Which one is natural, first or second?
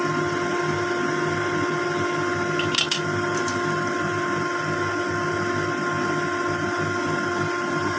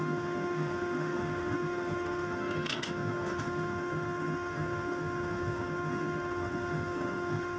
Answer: first